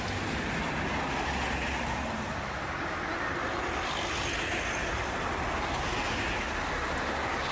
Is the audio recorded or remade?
recorded